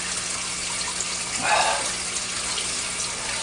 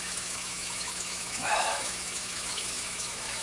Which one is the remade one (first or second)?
second